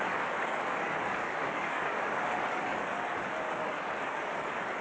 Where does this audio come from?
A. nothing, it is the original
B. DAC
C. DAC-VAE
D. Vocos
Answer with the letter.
B